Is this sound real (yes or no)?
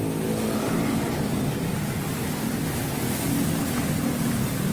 yes